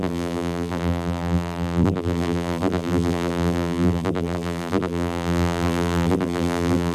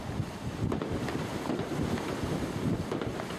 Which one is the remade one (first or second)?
first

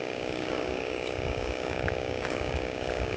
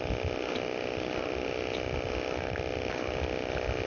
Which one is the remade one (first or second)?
first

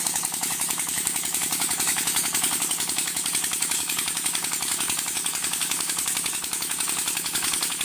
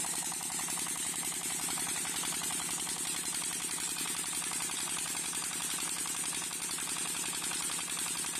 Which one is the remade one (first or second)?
first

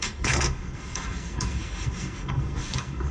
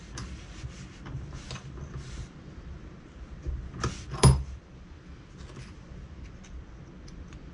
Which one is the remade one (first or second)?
first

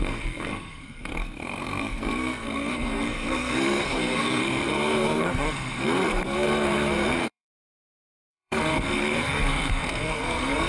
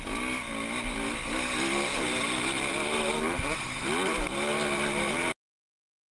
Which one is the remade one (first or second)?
first